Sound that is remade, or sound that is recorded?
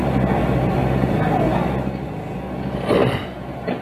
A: recorded